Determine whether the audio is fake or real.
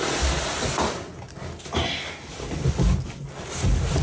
real